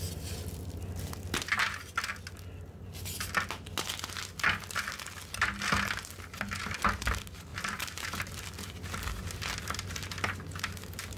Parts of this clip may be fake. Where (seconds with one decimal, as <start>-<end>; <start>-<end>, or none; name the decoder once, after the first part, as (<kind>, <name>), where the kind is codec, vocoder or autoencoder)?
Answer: 7.5-8.3 (vocoder, BigVGAN v2)